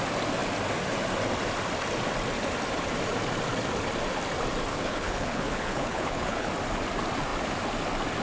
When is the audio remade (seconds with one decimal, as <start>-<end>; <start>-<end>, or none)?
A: 4.7-6.5